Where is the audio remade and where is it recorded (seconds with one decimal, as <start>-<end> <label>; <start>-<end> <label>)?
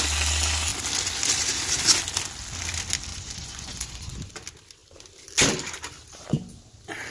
0.0-3.1 recorded; 3.1-4.3 remade; 4.3-7.1 recorded